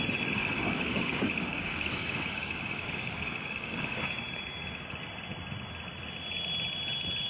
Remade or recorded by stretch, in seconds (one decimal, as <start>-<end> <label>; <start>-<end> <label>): 0.0-0.4 recorded; 0.4-4.0 remade; 4.0-7.3 recorded